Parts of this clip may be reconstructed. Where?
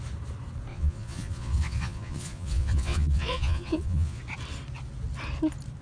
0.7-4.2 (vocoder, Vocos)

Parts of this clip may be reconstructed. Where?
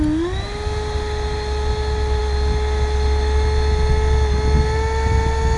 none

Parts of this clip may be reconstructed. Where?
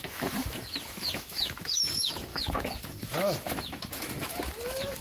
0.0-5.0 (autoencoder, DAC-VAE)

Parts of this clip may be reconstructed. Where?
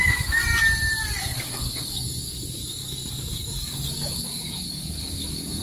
0.0-0.4 (codec, DAC); 1.2-5.6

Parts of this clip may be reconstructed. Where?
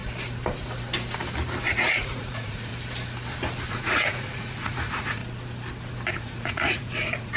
1.6-2.7 (vocoder, Vocos); 3.7-5.2; 6.1-7.4